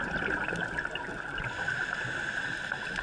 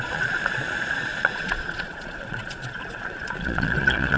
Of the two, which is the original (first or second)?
first